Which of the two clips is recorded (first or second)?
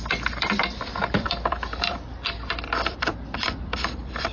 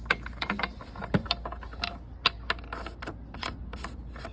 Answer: second